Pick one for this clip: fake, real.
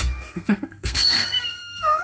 fake